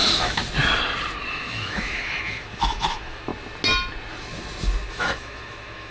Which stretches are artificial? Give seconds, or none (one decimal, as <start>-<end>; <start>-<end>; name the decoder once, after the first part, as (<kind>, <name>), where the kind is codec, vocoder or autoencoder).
0.0-0.4 (autoencoder, DAC-VAE); 1.3-3.3; 4.9-5.9